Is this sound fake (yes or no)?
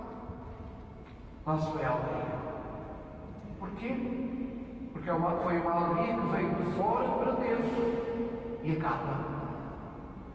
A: no